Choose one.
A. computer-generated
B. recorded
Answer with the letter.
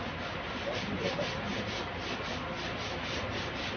A